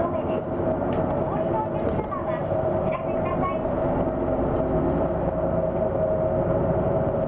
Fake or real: real